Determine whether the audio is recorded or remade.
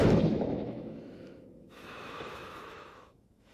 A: remade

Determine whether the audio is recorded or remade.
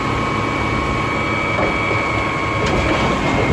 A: recorded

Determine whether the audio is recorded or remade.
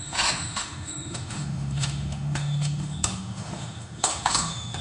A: remade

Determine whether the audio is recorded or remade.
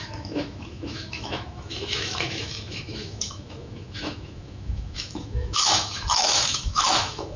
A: remade